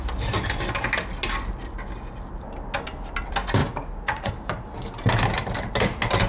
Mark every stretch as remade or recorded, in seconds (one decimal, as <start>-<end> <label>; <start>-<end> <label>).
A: 0.0-3.6 recorded; 3.6-4.3 remade; 4.3-6.3 recorded